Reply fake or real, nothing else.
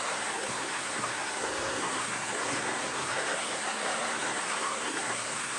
fake